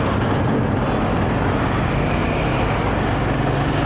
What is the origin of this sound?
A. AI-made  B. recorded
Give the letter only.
B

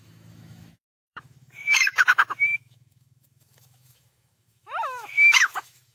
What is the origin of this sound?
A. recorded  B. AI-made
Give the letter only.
B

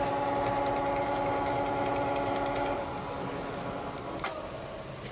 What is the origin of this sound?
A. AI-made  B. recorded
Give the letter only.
B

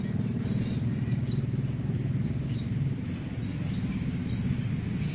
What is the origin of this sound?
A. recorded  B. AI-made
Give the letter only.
A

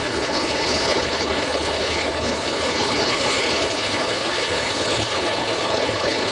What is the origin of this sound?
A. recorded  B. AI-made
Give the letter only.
B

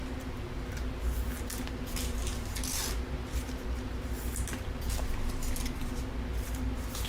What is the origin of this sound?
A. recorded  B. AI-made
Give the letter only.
A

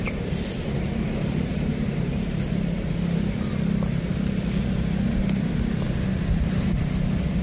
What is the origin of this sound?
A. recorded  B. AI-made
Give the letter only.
A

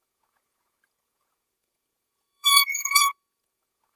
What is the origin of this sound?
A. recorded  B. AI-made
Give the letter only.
B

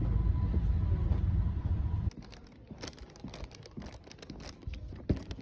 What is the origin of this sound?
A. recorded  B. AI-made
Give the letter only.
A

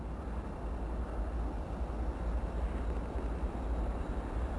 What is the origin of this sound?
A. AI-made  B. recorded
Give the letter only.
B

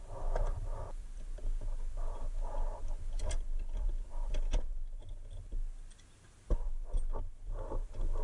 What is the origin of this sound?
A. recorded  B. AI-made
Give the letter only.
A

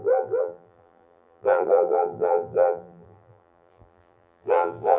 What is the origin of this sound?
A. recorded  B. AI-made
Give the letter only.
B